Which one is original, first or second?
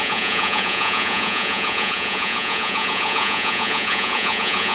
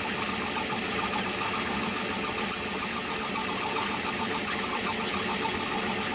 second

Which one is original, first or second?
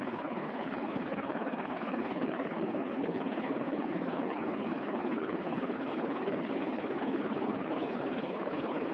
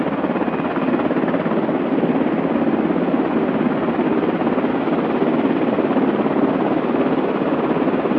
second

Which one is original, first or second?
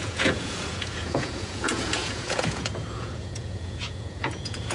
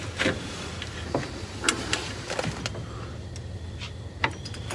second